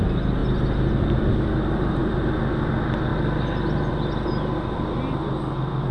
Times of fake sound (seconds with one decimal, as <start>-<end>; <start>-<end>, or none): none